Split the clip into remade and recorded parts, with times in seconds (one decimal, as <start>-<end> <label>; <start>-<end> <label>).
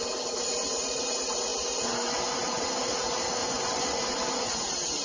0.0-3.4 recorded; 3.4-4.0 remade; 4.0-5.0 recorded